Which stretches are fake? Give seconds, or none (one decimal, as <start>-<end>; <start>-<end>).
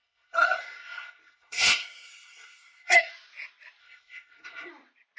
0.0-3.1; 3.8-4.7